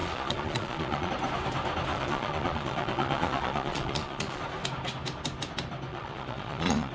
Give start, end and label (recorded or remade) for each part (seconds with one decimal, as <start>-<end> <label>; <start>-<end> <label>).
0.0-1.1 remade; 1.1-1.9 recorded; 1.9-4.4 remade; 4.4-5.9 recorded; 5.9-6.9 remade